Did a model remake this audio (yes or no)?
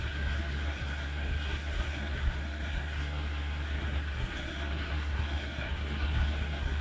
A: yes